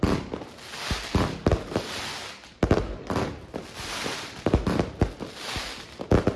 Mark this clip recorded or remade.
recorded